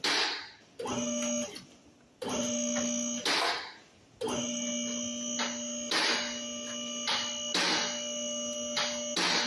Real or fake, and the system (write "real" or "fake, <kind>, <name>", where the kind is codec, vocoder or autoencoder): real